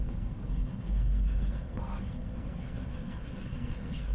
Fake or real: fake